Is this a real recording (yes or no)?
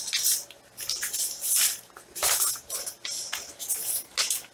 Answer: yes